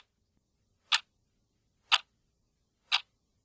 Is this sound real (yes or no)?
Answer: yes